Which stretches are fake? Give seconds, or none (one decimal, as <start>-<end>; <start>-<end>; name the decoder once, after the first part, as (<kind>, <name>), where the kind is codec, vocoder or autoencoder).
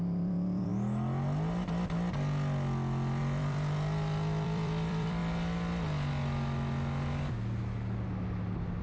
0.0-0.7 (vocoder, BigVGAN v2); 3.2-5.2